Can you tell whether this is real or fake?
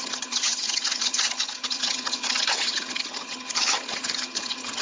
fake